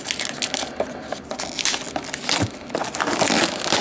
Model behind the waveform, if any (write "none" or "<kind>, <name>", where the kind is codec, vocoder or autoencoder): none